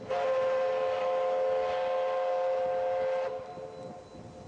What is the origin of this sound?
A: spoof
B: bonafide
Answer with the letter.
B